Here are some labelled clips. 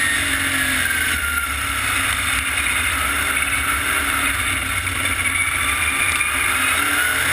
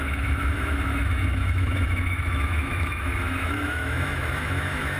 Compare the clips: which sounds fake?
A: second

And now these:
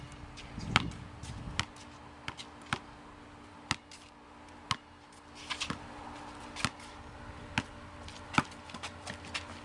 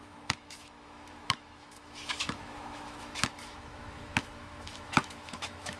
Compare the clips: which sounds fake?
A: second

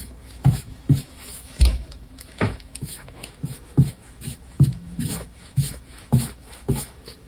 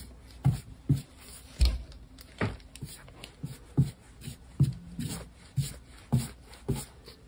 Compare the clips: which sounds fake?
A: first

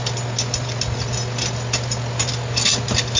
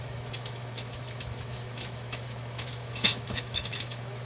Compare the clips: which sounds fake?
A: second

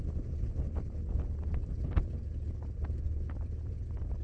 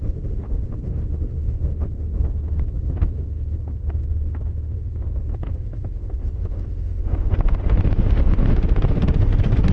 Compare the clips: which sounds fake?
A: second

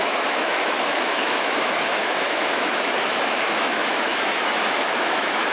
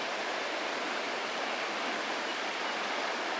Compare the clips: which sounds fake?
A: first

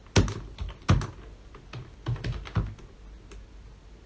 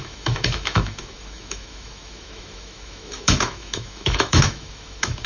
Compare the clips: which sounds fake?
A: second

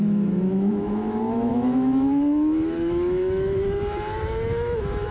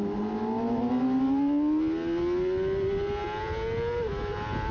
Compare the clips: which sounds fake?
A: first